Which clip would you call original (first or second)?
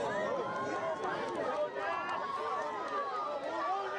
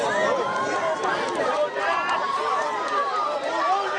first